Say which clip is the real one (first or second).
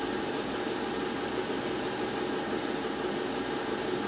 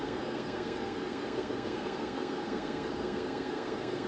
first